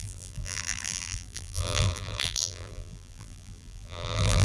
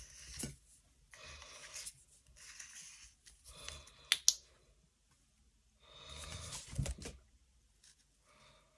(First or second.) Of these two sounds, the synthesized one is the first